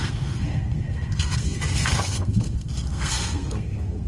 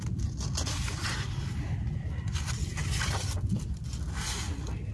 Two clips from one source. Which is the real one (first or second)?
second